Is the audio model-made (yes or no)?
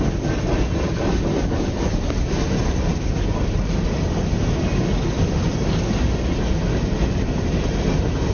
no